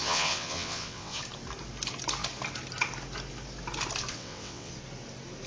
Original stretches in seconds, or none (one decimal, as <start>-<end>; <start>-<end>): 1.2-4.1; 4.7-5.5